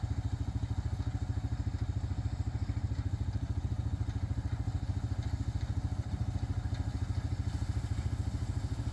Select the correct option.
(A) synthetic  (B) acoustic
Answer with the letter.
B